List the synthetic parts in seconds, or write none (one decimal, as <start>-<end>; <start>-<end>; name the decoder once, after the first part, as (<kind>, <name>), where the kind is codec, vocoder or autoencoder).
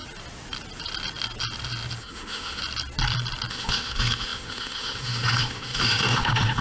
2.0-2.6 (autoencoder, DAC-VAE); 3.5-6.6